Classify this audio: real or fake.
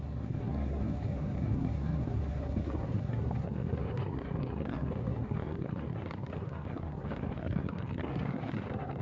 fake